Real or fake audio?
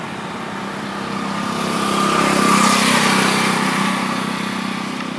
real